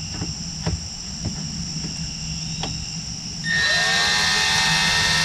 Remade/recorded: recorded